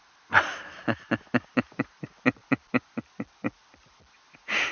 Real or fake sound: real